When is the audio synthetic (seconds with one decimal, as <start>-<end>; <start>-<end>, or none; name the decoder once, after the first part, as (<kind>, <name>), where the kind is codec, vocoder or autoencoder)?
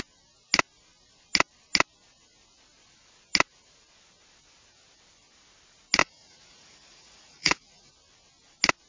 6.0-7.9 (vocoder, Vocos)